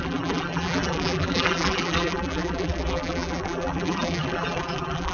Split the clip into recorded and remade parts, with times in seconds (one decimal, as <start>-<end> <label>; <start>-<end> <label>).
0.0-5.1 remade